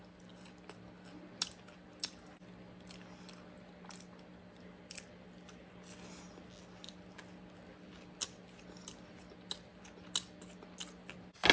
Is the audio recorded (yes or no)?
yes